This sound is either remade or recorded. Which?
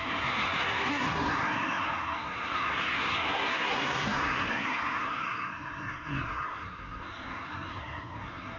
remade